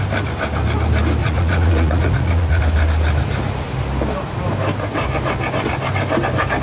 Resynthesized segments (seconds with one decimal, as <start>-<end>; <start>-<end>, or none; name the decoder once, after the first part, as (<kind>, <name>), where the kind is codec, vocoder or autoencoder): 1.2-2.6 (vocoder, Vocos)